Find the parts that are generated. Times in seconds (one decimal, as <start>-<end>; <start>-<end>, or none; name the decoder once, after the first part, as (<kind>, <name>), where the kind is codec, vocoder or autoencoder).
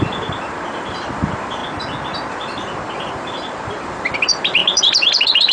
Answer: 0.0-1.6 (vocoder, BigVGAN v2); 2.3-5.5